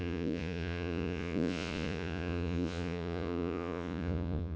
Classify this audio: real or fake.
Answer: fake